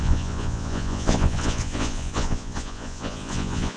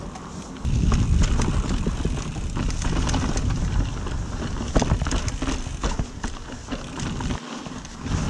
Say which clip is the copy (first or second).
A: first